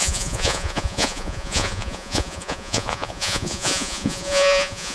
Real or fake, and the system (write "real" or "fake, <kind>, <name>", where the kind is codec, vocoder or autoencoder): fake, vocoder, Vocos